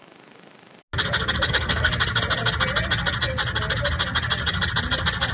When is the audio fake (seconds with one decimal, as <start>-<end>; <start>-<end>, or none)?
1.5-1.9